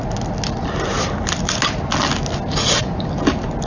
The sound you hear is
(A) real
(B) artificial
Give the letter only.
A